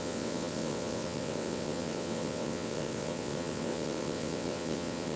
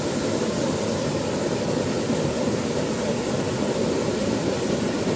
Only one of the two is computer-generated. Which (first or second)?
first